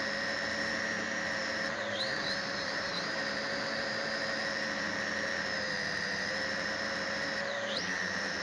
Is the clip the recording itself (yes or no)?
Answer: no